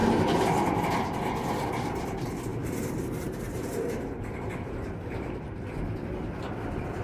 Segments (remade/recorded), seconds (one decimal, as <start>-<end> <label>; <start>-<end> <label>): 0.0-2.5 recorded; 2.5-5.8 remade; 5.8-7.0 recorded